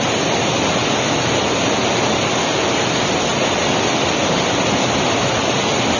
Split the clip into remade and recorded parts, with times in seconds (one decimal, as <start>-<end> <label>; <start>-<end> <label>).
0.0-6.0 recorded